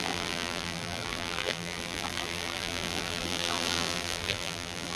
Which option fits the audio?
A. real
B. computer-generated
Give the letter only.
B